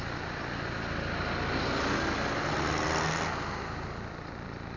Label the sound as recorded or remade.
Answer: recorded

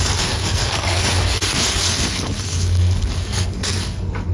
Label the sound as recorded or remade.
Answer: remade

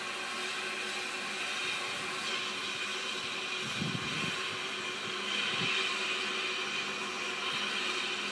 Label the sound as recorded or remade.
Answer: recorded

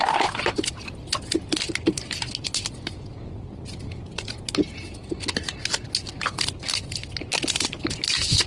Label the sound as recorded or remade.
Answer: recorded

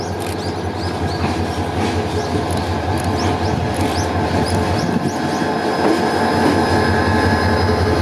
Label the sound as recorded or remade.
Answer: recorded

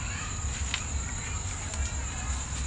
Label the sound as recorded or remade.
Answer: recorded